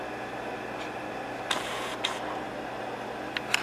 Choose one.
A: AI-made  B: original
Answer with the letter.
B